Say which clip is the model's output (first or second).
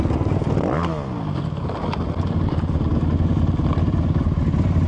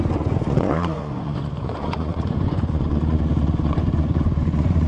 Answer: second